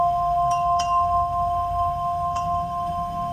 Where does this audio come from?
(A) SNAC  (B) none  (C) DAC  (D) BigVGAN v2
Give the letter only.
A